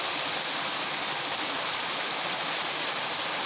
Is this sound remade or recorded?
recorded